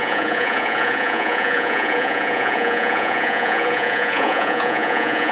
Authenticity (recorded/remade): remade